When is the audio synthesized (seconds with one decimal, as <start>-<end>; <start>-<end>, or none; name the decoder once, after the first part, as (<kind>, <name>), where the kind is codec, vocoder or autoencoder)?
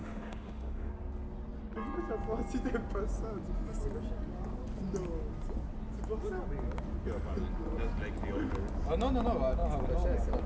0.0-0.9 (autoencoder, DAC-VAE)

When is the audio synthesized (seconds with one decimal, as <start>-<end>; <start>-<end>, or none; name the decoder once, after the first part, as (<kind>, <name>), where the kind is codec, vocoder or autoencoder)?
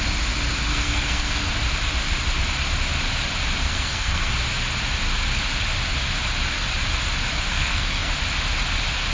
0.7-1.5 (codec, SNAC); 3.6-4.3; 7.5-8.1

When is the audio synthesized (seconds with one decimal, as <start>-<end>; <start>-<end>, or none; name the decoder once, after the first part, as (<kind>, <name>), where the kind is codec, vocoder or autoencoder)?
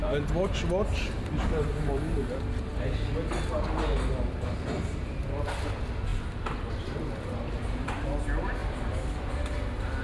none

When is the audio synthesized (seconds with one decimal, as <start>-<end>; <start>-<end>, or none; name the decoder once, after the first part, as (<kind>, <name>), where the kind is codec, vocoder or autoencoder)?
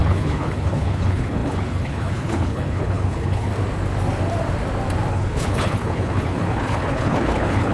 0.0-3.5 (codec, HILCodec); 5.1-7.7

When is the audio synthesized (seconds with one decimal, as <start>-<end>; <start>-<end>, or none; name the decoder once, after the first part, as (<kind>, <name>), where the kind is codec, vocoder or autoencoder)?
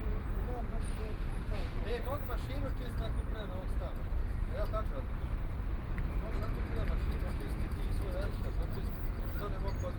0.0-0.6 (autoencoder, DAC-VAE); 7.0-8.6